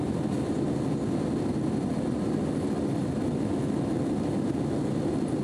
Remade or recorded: recorded